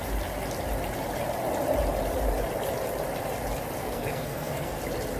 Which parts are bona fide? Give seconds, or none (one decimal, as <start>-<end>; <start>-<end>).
0.0-3.8; 4.8-5.2